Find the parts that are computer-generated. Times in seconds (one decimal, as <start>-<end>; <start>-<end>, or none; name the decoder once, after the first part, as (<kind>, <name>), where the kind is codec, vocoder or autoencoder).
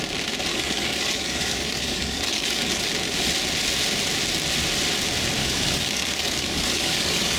0.5-2.8 (codec, DAC); 5.4-7.4